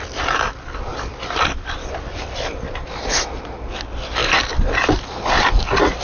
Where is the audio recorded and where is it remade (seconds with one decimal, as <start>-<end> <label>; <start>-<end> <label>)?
0.0-0.9 recorded; 0.9-3.1 remade; 3.1-4.2 recorded; 4.2-4.8 remade; 4.8-6.0 recorded